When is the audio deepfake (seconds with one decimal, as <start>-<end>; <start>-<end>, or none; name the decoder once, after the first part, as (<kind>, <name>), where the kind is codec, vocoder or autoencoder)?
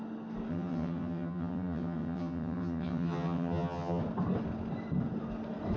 0.5-4.0 (vocoder, HiFi-GAN)